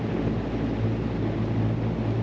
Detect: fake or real real